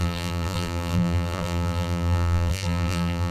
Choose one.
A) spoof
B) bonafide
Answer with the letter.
A